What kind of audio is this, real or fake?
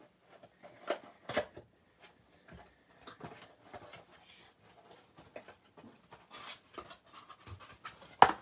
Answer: real